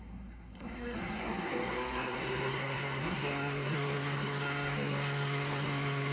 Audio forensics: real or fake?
fake